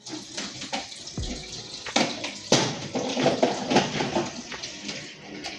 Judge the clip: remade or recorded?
recorded